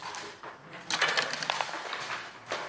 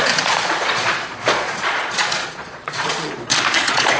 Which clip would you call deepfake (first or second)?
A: second